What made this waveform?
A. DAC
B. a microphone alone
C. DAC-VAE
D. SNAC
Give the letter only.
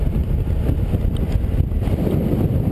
B